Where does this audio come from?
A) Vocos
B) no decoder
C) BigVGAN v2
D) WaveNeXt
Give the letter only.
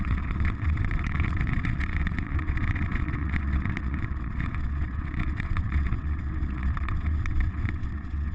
D